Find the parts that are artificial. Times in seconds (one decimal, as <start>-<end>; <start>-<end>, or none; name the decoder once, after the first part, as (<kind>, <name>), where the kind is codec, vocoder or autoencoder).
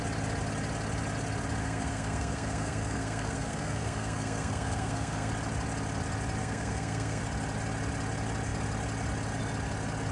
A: 1.6-5.3 (codec, SNAC); 6.4-7.2